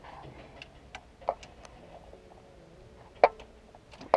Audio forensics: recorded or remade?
recorded